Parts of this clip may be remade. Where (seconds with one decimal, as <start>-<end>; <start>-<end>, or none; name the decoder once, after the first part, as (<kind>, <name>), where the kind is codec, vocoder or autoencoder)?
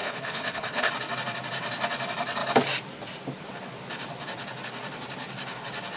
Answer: 0.0-0.9 (codec, HILCodec)